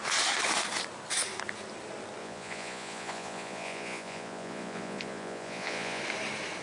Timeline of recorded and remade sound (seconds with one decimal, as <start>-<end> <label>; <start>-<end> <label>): 0.0-2.2 recorded; 2.2-6.0 remade; 6.0-6.6 recorded